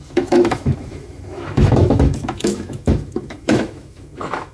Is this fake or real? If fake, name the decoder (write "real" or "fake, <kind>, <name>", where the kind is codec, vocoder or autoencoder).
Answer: fake, autoencoder, DAC-VAE